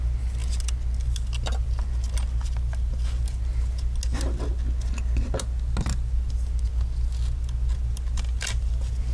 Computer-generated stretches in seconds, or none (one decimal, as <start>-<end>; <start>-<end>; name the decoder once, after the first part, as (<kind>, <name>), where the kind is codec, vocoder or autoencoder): none